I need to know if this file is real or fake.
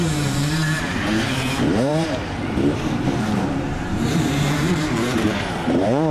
fake